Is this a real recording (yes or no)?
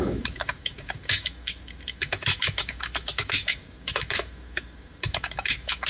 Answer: no